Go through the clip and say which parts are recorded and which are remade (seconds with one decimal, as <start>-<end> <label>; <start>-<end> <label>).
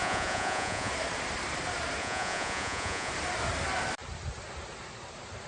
0.0-0.9 remade; 0.9-2.0 recorded; 2.0-3.1 remade; 3.1-5.5 recorded